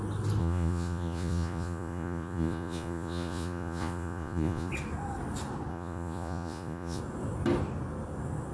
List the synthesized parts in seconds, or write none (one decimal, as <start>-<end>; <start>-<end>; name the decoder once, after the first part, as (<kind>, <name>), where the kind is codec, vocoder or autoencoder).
0.4-4.7 (vocoder, Vocos); 5.7-7.0